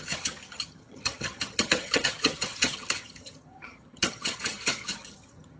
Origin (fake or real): fake